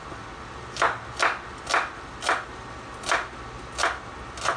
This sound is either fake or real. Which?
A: real